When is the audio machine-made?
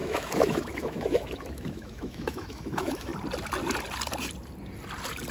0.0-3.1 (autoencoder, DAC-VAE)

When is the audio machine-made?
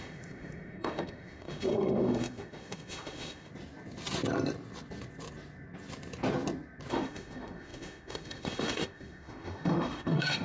0.0-3.5 (autoencoder, DAC-VAE); 6.9-10.4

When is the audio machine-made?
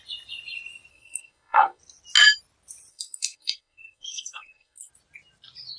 0.9-1.8 (codec, SNAC); 2.9-4.9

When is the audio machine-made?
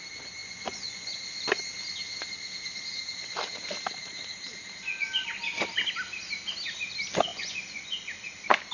0.4-1.1 (vocoder, Vocos); 7.3-7.9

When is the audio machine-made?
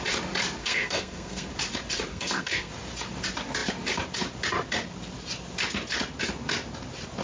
0.6-1.5 (codec, SNAC); 2.1-2.7